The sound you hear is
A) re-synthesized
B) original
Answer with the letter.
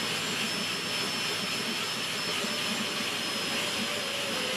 B